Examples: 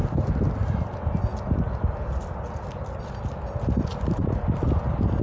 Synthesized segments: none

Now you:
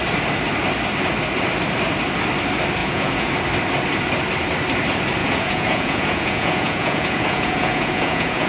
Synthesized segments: 2.8-3.3 (vocoder, Vocos); 5.2-8.5

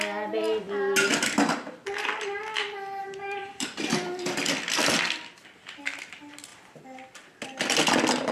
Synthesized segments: 3.0-5.4 (vocoder, BigVGAN v2)

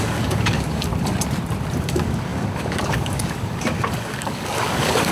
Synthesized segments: 0.0-0.9 (codec, DAC); 1.8-5.1

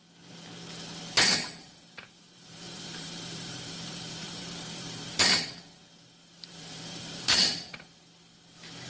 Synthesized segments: 1.6-5.3 (vocoder, BigVGAN v2); 6.3-7.4

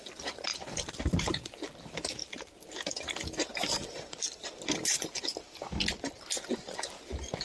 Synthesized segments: 0.5-1.5 (vocoder, BigVGAN v2); 2.2-3.1